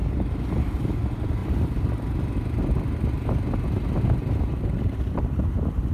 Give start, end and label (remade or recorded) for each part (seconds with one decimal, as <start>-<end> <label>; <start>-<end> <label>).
0.0-5.9 recorded